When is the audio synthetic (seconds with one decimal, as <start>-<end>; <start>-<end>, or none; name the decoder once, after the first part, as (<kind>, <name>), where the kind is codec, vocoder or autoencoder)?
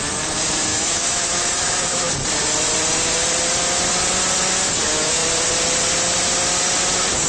0.7-2.1 (autoencoder, DAC-VAE)